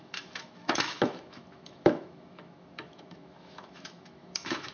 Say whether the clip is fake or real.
fake